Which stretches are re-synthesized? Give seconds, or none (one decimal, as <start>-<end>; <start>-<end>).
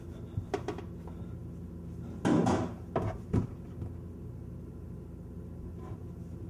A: none